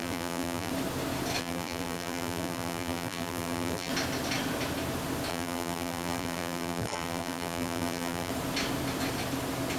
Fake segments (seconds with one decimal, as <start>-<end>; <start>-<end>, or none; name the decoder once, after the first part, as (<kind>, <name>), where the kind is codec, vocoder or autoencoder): 0.0-0.7 (vocoder, BigVGAN v2); 1.4-3.9; 5.3-8.3